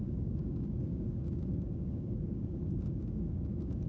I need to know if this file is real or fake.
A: fake